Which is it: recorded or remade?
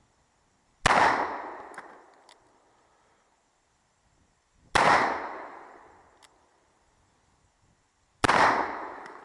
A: recorded